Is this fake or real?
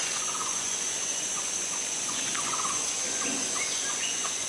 fake